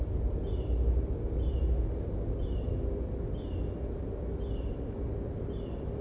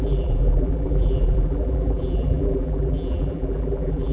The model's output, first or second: second